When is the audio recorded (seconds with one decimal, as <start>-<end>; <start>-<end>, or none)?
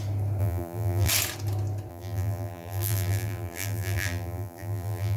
0.0-0.4; 1.1-1.9